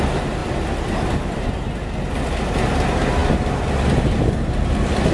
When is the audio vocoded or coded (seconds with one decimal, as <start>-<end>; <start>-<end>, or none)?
none